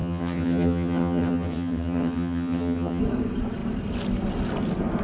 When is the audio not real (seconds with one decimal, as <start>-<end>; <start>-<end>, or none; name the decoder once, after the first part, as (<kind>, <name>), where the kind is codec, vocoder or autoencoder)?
0.0-3.0 (vocoder, HiFi-GAN)